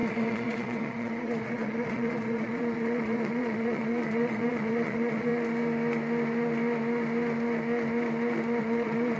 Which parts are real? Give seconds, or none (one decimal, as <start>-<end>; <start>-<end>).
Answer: 5.3-8.6